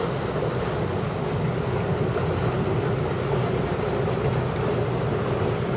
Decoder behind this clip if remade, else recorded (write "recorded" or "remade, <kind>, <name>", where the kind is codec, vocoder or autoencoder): recorded